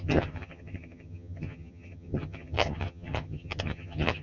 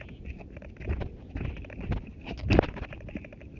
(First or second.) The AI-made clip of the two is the first